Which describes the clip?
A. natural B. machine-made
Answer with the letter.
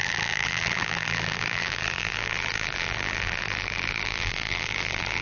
B